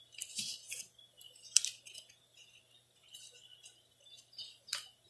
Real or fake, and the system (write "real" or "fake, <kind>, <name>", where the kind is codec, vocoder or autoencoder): real